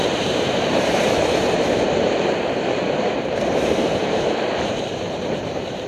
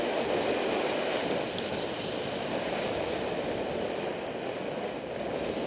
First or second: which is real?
second